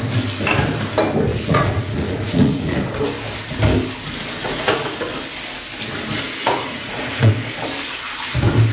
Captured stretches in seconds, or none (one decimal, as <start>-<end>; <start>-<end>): 0.0-1.3; 2.8-4.4; 4.9-6.4; 7.3-8.7